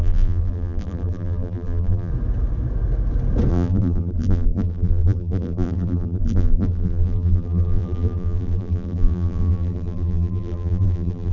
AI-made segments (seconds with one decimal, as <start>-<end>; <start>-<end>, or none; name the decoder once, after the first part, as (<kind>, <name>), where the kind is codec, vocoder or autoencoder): 0.0-2.1 (vocoder, BigVGAN v2); 3.5-11.3